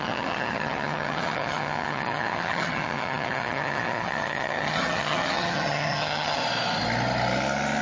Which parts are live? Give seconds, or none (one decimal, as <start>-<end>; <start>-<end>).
6.4-7.8